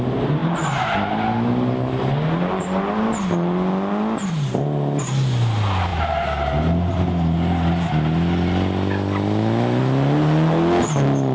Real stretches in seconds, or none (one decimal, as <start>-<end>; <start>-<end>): 0.0-11.3